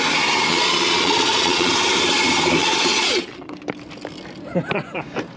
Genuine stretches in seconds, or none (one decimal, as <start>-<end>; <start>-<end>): 0.0-0.5; 1.7-2.6; 3.5-5.4